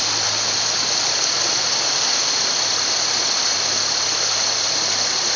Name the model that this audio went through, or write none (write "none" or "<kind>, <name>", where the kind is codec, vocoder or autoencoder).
none